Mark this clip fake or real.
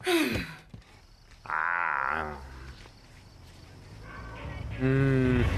real